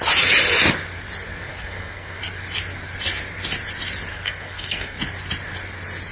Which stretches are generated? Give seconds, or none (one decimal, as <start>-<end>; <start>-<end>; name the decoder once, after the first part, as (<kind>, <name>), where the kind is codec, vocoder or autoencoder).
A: 1.4-2.2 (codec, SNAC); 4.1-5.0